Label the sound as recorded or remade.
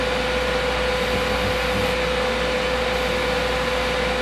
recorded